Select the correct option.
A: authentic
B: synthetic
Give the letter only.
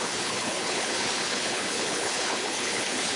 B